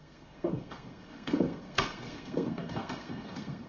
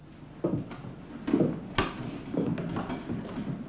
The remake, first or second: first